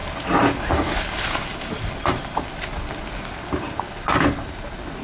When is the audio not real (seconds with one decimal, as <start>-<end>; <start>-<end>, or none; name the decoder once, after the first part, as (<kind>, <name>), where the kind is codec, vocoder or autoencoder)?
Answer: 0.0-2.7 (vocoder, BigVGAN v2); 3.3-5.0